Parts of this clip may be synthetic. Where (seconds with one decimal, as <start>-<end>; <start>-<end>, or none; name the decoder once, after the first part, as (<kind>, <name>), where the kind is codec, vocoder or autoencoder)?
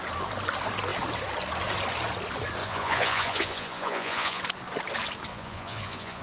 2.6-4.4 (vocoder, Vocos); 5.3-6.2